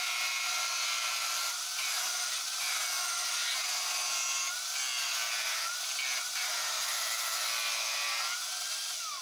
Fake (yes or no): no